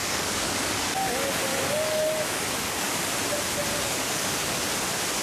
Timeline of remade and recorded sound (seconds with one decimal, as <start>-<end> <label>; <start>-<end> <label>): 0.0-1.1 remade; 1.1-1.5 recorded; 1.5-3.1 remade; 3.1-3.7 recorded; 3.7-4.6 remade; 4.6-5.2 recorded